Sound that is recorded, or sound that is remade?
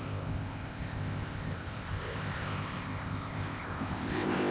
remade